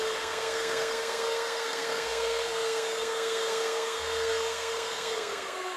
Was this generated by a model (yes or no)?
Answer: yes